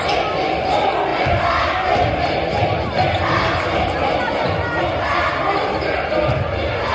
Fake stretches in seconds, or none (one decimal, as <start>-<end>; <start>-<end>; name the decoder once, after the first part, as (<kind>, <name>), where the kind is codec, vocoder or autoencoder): none